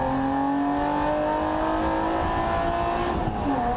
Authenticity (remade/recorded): recorded